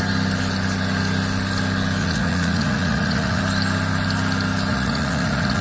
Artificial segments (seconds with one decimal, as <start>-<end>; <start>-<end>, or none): 2.0-3.4; 4.7-5.6